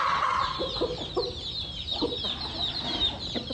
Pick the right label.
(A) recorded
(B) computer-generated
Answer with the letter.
A